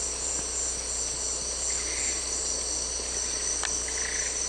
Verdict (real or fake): real